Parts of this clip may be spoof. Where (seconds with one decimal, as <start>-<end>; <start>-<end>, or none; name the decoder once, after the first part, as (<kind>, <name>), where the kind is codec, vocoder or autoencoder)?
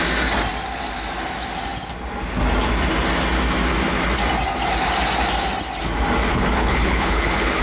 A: 6.3-7.6 (codec, HILCodec)